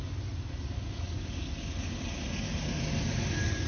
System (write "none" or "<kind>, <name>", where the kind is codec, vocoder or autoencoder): none